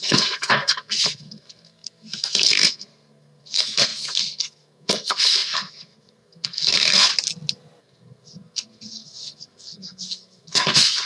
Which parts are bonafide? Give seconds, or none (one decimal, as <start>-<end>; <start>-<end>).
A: 7.1-7.8